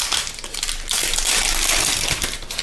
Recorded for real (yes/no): yes